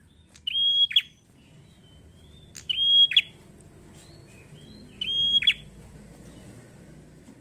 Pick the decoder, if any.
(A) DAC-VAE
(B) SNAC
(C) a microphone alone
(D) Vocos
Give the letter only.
C